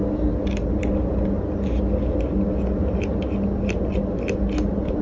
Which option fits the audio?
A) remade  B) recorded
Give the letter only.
B